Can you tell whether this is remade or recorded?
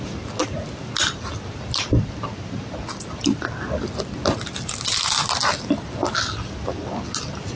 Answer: recorded